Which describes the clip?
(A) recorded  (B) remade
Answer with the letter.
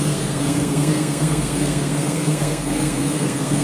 B